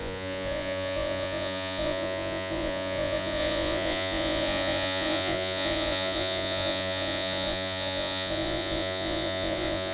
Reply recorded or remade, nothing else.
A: remade